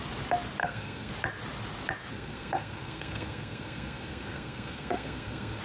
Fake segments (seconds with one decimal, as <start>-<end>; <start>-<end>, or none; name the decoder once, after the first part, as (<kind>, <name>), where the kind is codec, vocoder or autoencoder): 0.6-1.1 (codec, SNAC); 2.1-5.6

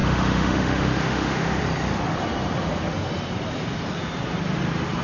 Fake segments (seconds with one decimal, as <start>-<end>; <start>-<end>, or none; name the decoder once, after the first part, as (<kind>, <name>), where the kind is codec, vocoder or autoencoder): 0.0-1.6 (autoencoder, DAC-VAE)

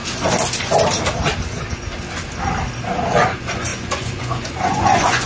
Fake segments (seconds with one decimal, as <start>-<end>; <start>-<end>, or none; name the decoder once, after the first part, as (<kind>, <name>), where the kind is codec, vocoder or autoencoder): 3.2-5.3 (vocoder, Vocos)